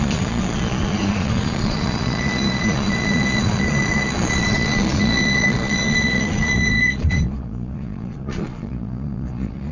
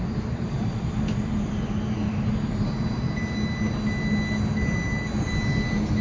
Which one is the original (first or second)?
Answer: second